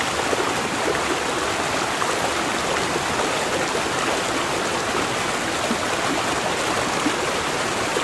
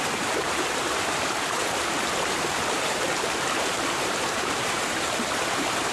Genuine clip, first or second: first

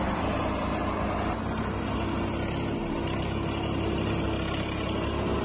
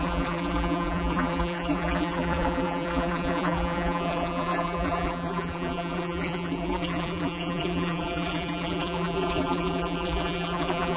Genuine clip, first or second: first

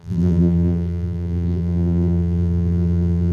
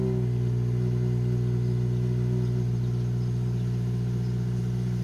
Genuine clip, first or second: second